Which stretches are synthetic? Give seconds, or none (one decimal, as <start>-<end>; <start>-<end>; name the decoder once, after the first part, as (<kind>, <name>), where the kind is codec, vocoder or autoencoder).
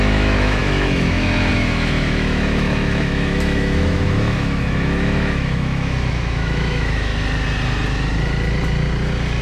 0.0-7.1 (autoencoder, DAC-VAE)